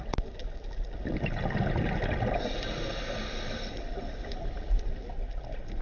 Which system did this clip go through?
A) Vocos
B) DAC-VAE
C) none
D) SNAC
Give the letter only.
C